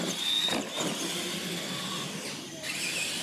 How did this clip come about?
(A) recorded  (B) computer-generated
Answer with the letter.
A